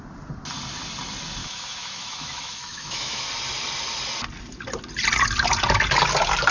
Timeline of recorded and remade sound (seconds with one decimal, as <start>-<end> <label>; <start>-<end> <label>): 0.0-1.4 recorded; 1.4-3.3 remade; 3.3-6.5 recorded